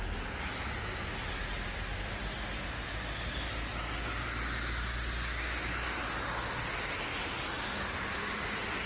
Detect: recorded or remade recorded